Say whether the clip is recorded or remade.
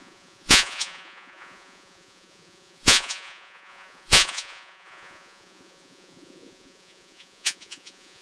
remade